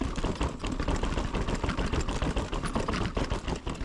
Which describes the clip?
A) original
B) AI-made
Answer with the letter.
A